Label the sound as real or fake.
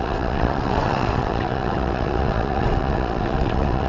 fake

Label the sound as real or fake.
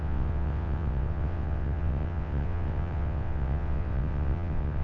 fake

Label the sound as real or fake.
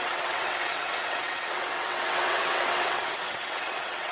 fake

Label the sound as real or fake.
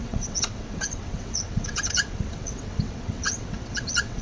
fake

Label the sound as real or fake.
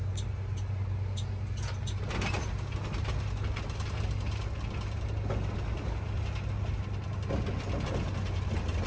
real